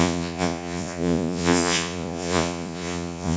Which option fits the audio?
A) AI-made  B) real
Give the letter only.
A